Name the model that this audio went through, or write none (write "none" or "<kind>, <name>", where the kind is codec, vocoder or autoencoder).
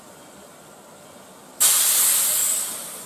none